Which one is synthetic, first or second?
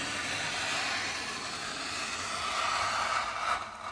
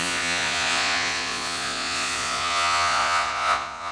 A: second